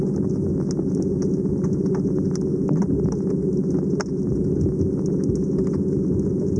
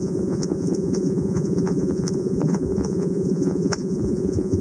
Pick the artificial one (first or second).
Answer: second